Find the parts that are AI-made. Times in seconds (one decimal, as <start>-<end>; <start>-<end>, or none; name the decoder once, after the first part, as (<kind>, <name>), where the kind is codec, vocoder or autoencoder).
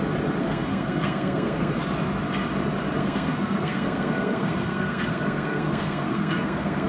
0.4-1.8 (codec, SNAC); 3.0-6.9